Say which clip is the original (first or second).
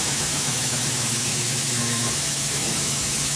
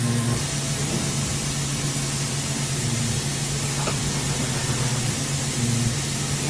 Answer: second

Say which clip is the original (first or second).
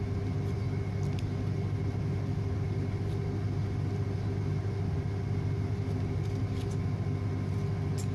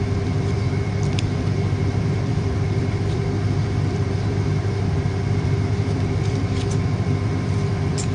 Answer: first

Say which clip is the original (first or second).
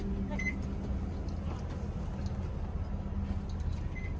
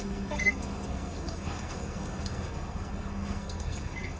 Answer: first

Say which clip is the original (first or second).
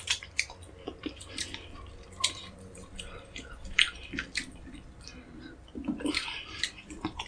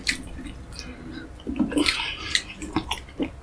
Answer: second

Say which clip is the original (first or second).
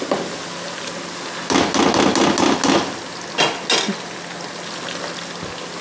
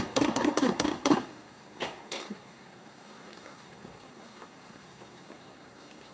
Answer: first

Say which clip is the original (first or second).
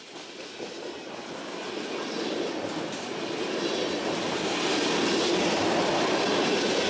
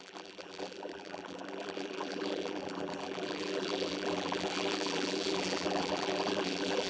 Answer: first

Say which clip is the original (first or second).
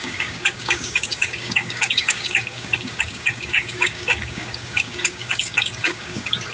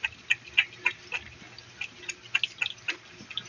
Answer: second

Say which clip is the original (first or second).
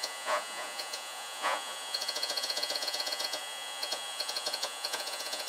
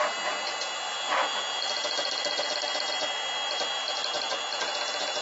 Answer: second